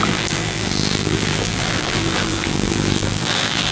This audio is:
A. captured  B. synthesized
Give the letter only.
B